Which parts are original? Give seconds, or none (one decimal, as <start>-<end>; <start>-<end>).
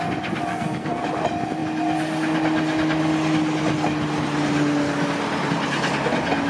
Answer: 0.0-0.5; 1.0-6.5